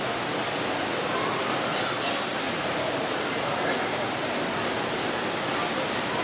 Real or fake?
real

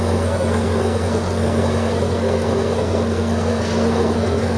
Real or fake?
fake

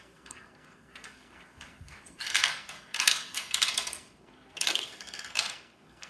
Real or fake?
fake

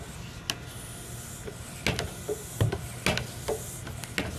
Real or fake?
real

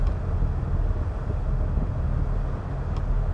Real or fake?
real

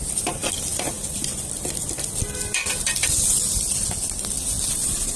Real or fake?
real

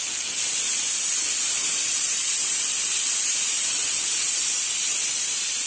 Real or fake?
real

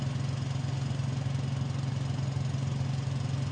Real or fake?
real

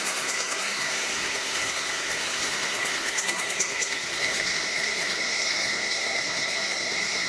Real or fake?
fake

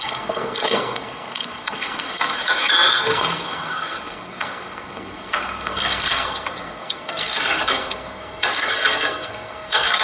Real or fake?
fake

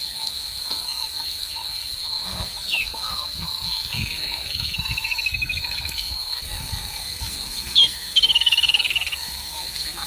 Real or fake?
fake